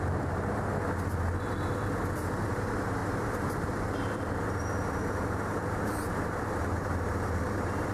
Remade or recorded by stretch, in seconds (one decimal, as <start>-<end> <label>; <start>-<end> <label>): 0.0-0.7 remade; 0.7-2.5 recorded; 2.5-7.9 remade